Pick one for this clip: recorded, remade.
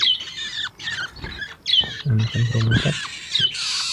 recorded